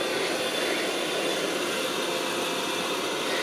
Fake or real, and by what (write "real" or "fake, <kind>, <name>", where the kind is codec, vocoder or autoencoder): real